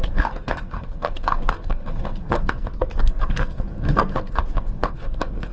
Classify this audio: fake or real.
fake